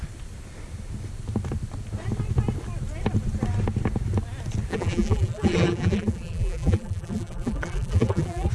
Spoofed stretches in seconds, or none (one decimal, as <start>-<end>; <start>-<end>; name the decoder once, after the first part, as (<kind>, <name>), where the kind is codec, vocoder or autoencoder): 4.7-8.5 (vocoder, BigVGAN v2)